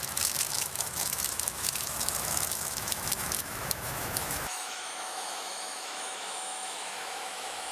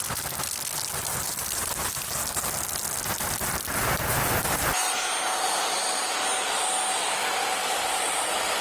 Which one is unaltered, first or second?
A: second